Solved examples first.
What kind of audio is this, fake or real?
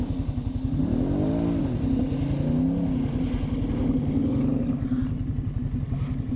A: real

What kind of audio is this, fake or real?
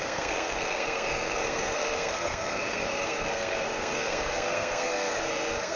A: fake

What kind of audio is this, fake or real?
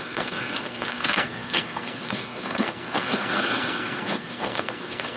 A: fake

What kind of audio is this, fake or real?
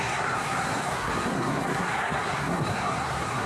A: fake